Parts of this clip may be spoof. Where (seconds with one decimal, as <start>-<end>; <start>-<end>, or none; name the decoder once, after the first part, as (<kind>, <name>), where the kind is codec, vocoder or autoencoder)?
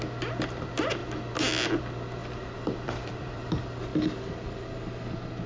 2.2-3.5 (vocoder, BigVGAN v2)